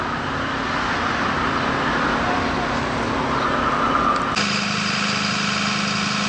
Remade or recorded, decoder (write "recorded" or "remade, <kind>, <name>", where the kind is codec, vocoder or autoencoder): recorded